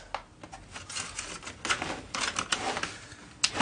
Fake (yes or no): no